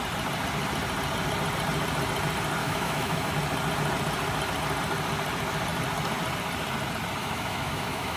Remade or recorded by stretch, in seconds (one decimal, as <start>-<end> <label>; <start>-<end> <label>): 0.0-2.6 recorded; 2.6-3.3 remade; 3.3-7.2 recorded; 7.2-8.2 remade